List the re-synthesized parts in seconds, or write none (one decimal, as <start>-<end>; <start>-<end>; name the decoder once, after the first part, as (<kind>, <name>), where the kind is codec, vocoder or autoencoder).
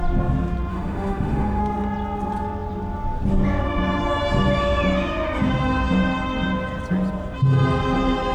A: 0.7-1.6 (autoencoder, DAC-VAE)